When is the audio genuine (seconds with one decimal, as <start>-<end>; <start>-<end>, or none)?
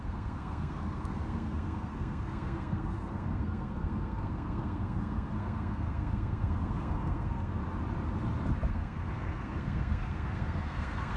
7.6-8.7